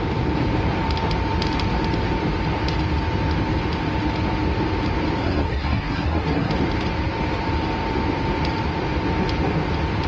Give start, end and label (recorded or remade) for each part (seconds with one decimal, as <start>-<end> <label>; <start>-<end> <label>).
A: 0.0-5.2 recorded; 5.2-6.5 remade; 6.5-10.1 recorded